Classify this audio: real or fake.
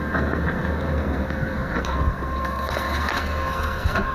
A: fake